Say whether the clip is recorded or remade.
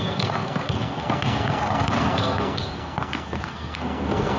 remade